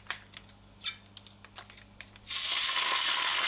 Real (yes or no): yes